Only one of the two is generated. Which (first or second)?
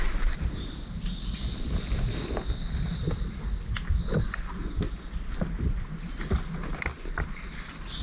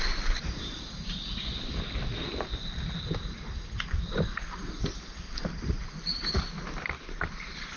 second